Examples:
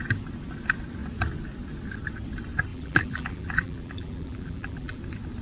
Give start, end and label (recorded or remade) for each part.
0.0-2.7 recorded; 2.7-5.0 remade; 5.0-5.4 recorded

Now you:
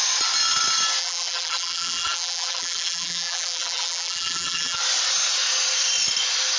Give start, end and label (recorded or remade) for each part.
0.0-1.0 recorded; 1.0-4.8 remade; 4.8-6.6 recorded

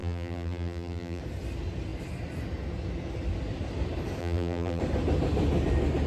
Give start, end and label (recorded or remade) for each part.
0.0-1.2 remade; 1.2-4.2 recorded; 4.2-4.8 remade; 4.8-6.1 recorded

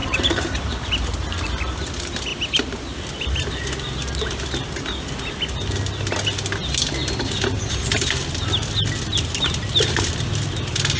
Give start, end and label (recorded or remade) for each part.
0.0-0.7 remade; 0.7-11.0 recorded

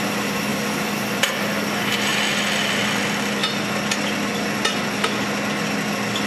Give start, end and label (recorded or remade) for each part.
0.0-0.5 recorded; 0.5-1.2 remade; 1.2-6.3 recorded

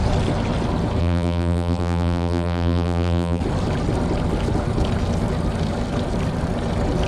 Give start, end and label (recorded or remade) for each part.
0.0-1.0 recorded; 1.0-3.4 remade; 3.4-7.1 recorded